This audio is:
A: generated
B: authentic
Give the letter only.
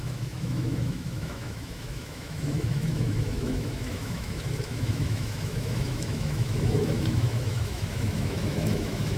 A